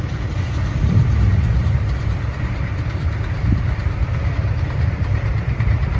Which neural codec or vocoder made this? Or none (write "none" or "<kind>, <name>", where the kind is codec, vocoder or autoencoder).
vocoder, BigVGAN v2